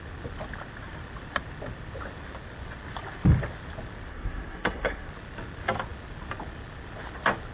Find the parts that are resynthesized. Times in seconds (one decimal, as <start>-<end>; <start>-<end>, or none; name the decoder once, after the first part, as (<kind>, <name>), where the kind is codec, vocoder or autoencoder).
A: 4.1-5.1 (codec, SNAC)